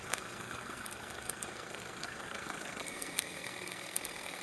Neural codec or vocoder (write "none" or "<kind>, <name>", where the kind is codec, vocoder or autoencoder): codec, SNAC